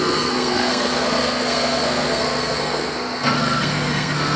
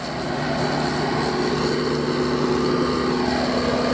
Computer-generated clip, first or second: first